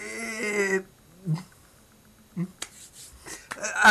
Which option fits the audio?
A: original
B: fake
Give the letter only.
A